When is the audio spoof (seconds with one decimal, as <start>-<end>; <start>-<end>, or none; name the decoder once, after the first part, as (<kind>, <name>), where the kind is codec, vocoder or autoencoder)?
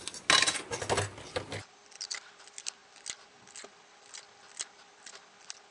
none